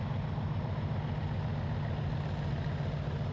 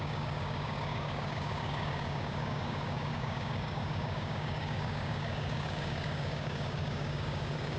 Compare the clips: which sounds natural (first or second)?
first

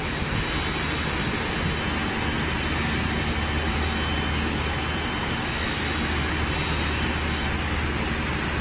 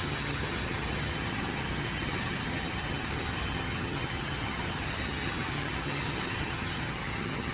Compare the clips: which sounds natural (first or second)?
first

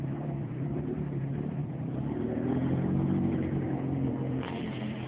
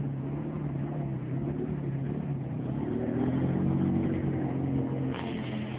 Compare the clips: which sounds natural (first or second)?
second